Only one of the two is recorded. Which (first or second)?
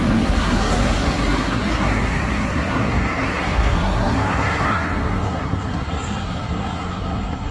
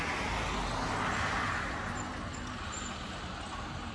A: second